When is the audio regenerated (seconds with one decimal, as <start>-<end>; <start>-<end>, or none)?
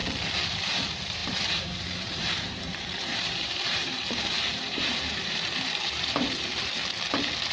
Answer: 0.5-7.5